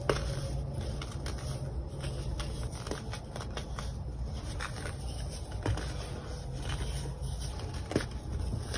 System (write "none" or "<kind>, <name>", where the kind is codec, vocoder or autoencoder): none